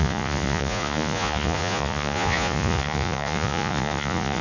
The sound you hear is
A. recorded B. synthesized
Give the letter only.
B